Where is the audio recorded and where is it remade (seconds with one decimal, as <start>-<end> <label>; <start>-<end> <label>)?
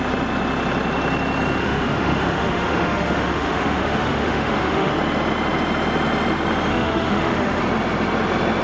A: 0.0-1.6 recorded; 1.6-4.9 remade; 4.9-6.7 recorded; 6.7-7.6 remade; 7.6-8.6 recorded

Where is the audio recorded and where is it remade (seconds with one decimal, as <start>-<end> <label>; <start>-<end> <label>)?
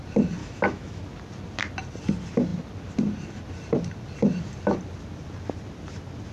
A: 0.0-0.4 recorded; 0.4-1.0 remade; 1.0-6.3 recorded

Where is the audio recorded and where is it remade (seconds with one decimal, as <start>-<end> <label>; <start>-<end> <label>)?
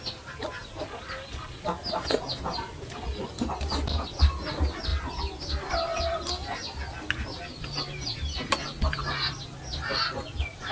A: 0.0-10.7 recorded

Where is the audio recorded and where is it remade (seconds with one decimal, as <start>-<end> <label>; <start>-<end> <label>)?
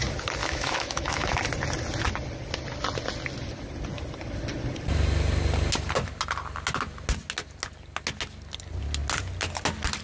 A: 0.0-0.4 recorded; 0.4-1.4 remade; 1.4-10.0 recorded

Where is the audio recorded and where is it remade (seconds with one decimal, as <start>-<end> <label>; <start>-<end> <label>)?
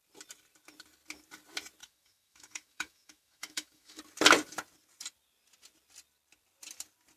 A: 0.0-1.8 recorded; 1.8-4.0 remade; 4.0-7.2 recorded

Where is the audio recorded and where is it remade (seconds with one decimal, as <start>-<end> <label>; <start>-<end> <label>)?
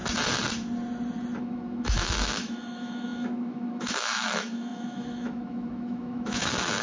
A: 0.0-1.4 recorded; 1.4-6.8 remade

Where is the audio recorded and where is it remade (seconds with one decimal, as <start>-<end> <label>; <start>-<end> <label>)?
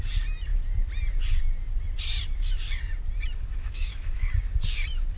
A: 0.0-3.5 recorded; 3.5-4.3 remade; 4.3-5.2 recorded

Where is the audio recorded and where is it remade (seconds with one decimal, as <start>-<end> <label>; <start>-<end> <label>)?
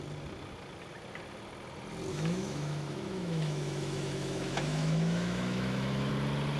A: 0.0-2.1 recorded; 2.1-6.1 remade; 6.1-6.6 recorded